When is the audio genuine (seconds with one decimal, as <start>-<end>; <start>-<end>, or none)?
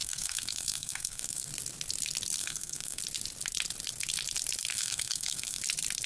1.5-2.4; 3.0-4.7; 5.6-6.1